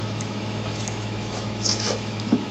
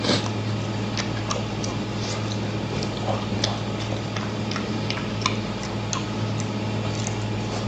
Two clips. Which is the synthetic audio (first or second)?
first